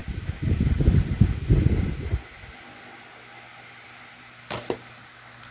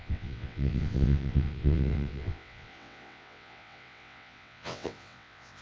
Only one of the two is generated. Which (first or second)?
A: second